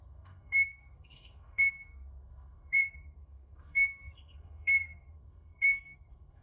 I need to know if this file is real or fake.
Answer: fake